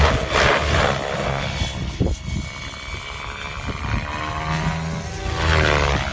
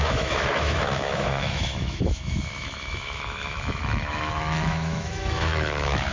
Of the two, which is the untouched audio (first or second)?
first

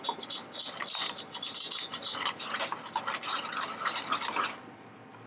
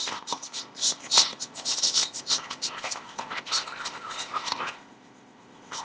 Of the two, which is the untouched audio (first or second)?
first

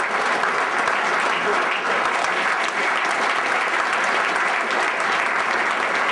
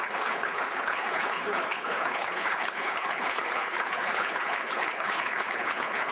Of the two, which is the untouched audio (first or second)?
first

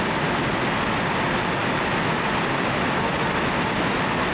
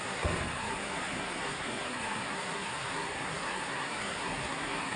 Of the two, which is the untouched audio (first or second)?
first